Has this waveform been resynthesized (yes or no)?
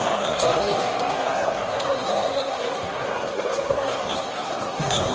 yes